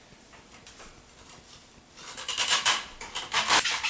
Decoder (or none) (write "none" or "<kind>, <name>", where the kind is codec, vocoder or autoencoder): vocoder, BigVGAN v2